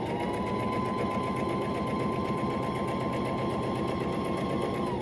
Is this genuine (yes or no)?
yes